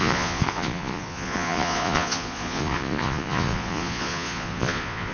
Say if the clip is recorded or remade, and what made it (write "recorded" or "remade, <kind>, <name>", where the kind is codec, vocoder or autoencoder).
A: remade, vocoder, Vocos